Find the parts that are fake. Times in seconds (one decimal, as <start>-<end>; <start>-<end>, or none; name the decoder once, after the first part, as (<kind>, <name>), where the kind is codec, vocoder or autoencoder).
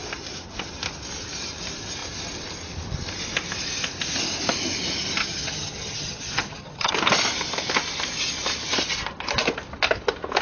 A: 5.2-6.9 (vocoder, HiFi-GAN)